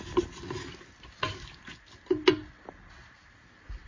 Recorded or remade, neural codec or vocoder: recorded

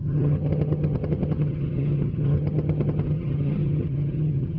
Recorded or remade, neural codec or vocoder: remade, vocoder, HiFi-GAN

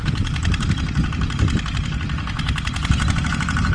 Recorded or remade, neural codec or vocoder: recorded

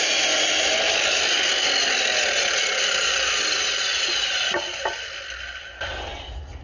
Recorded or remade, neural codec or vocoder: recorded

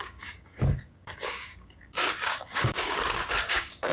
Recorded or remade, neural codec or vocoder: remade, codec, DAC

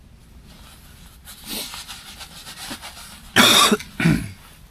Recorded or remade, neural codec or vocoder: recorded